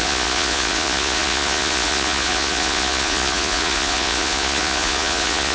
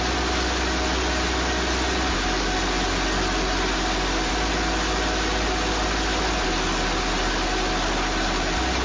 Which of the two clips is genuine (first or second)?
second